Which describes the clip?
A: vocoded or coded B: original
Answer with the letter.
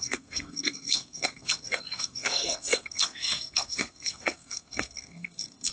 A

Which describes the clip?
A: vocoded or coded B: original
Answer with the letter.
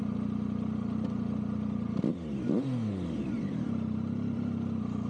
B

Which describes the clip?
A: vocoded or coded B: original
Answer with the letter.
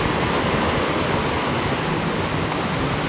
B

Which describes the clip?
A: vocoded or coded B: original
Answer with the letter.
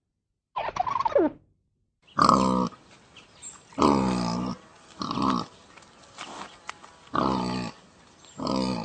B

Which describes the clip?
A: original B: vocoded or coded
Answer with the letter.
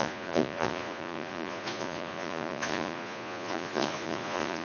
B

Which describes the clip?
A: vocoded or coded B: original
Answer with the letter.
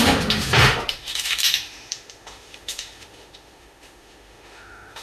A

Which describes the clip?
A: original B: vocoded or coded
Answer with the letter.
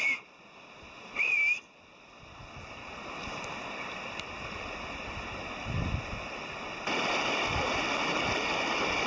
A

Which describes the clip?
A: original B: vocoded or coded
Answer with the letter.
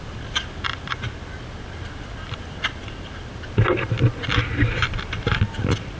A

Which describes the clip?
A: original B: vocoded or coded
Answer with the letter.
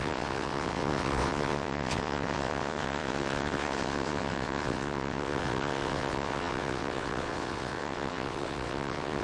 B